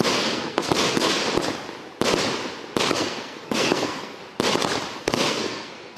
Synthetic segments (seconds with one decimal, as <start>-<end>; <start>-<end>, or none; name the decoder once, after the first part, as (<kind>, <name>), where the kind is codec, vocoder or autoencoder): 0.0-1.2 (codec, SNAC); 2.8-4.2; 5.0-6.0